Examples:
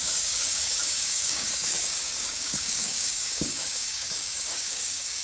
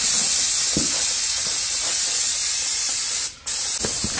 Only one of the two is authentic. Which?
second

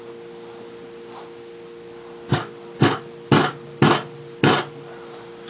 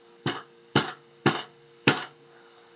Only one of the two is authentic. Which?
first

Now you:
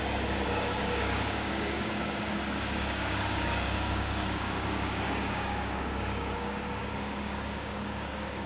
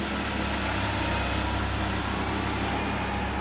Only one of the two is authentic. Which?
second